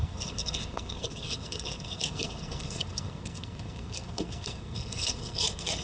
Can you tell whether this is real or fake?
fake